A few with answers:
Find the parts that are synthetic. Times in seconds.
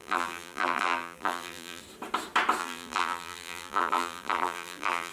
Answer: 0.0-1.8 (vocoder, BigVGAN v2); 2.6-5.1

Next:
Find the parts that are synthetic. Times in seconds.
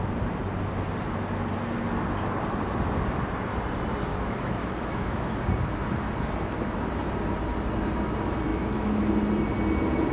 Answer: 4.1-5.4 (autoencoder, DAC-VAE); 8.5-9.0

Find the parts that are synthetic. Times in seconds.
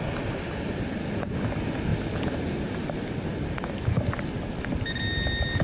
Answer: none